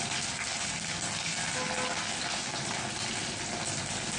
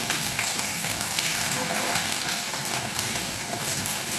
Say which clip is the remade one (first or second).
second